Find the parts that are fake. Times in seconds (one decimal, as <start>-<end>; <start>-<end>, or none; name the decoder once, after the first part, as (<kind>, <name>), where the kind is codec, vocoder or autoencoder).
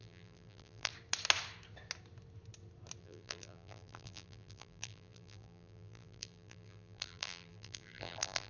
0.0-0.9 (vocoder, BigVGAN v2); 3.0-8.5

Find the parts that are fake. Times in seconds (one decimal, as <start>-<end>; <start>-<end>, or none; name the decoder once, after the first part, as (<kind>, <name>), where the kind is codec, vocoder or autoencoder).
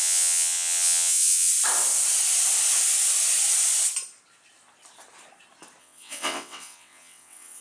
0.0-1.5 (vocoder, WaveNeXt); 5.8-7.6